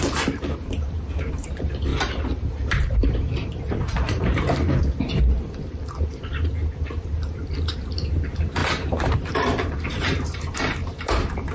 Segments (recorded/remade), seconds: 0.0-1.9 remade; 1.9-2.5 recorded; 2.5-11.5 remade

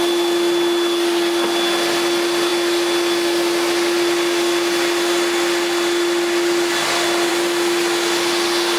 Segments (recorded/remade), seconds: 0.0-8.8 recorded

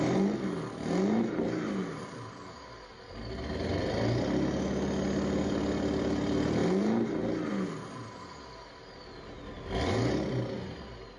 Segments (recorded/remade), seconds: 0.0-11.2 recorded

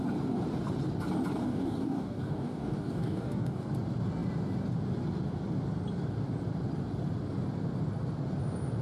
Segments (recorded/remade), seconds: 0.0-1.4 recorded; 1.4-3.7 remade; 3.7-8.8 recorded

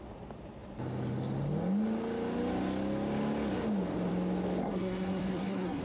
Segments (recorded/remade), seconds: 0.0-4.6 recorded; 4.6-5.8 remade

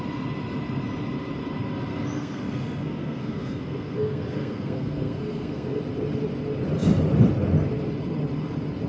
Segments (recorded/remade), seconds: 0.0-1.9 recorded; 1.9-5.8 remade; 5.8-8.9 recorded